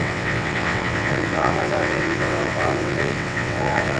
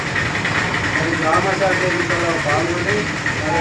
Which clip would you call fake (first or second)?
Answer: first